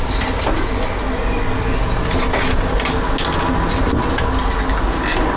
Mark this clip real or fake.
real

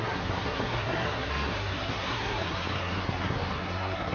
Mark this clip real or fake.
fake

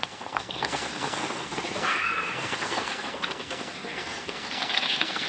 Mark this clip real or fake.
fake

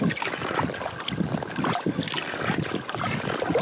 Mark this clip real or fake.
real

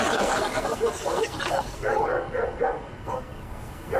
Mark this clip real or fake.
fake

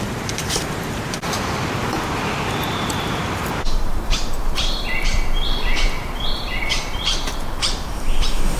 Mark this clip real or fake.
fake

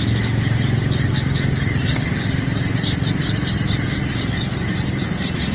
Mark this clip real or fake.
real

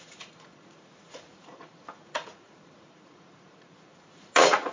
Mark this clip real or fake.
fake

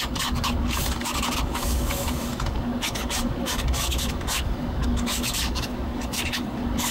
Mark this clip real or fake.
fake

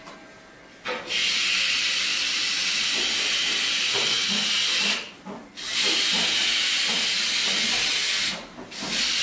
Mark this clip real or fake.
real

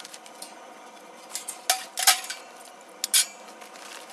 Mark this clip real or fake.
real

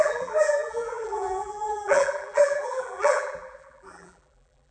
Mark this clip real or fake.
fake